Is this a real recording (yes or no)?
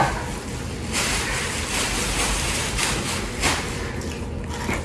yes